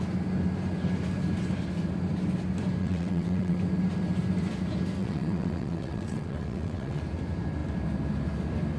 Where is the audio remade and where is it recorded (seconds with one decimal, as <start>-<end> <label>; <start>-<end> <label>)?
0.0-2.8 recorded; 2.8-3.6 remade; 3.6-5.0 recorded; 5.0-7.0 remade; 7.0-8.8 recorded